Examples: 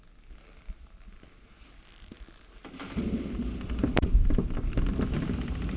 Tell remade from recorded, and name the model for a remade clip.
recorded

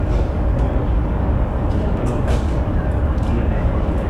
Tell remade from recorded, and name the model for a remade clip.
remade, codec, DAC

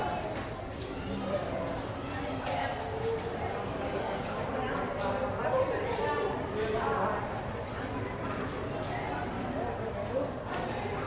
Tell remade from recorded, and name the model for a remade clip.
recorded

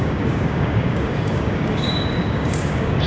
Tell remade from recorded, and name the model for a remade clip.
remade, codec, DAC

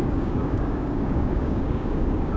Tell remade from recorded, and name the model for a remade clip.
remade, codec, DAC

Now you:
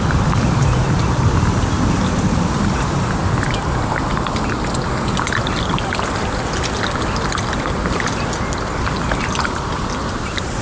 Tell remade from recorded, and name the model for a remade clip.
recorded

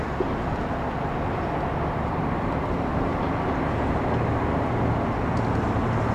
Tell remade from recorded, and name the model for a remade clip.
recorded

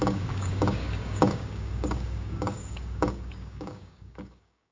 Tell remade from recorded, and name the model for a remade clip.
remade, codec, DAC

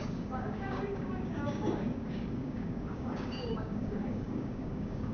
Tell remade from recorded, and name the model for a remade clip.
remade, codec, DAC